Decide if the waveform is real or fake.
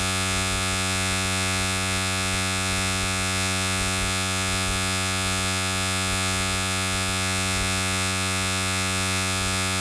fake